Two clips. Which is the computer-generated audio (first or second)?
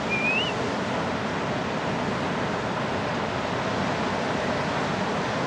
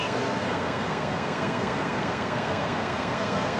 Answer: second